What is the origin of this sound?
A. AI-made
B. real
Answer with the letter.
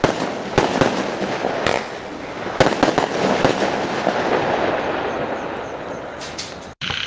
B